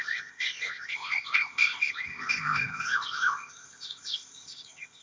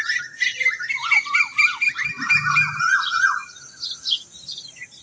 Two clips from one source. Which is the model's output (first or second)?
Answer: first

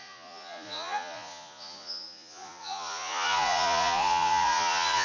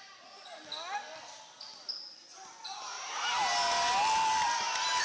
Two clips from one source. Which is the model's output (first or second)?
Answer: first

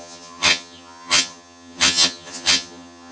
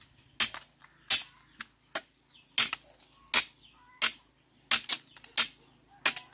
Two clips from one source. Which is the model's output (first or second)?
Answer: first